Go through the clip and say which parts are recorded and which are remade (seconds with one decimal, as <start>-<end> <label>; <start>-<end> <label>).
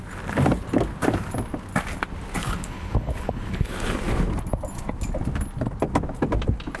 0.0-2.4 recorded; 2.4-3.7 remade; 3.7-6.8 recorded